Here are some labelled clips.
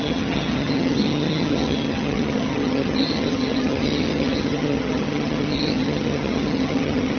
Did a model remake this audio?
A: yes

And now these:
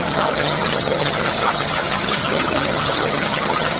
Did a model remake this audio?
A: yes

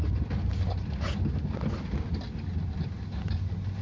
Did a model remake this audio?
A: no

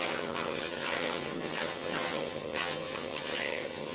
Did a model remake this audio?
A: yes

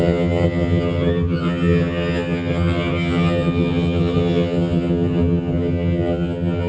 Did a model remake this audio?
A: yes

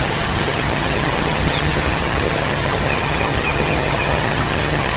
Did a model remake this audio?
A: yes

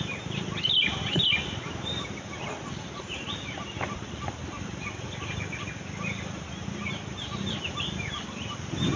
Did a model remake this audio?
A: no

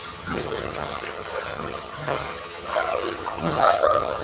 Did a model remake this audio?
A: yes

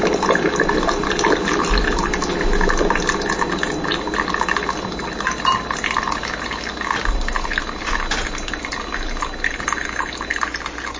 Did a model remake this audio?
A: no